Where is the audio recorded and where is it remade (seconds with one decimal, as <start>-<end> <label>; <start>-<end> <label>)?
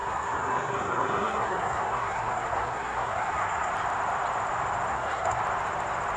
0.0-3.7 remade; 3.7-4.9 recorded; 4.9-5.4 remade; 5.4-6.2 recorded